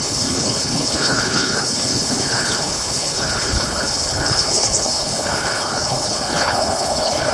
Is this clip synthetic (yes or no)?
yes